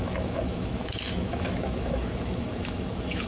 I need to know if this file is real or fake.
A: fake